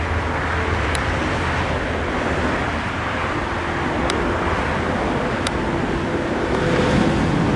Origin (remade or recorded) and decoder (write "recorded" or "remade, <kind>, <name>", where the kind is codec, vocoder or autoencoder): recorded